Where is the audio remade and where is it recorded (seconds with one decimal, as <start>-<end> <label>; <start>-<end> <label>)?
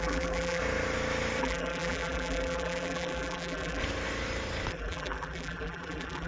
0.0-0.6 remade; 0.6-1.4 recorded; 1.4-3.8 remade; 3.8-4.7 recorded; 4.7-6.3 remade